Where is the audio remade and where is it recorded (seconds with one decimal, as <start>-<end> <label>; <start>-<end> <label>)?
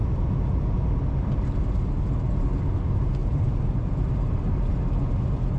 0.0-3.2 recorded; 3.2-3.7 remade; 3.7-5.6 recorded